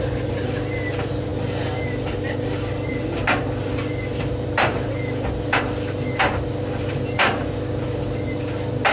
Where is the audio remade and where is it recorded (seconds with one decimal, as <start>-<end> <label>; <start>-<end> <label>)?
0.0-8.9 recorded